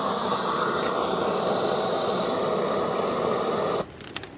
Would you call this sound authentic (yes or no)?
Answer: yes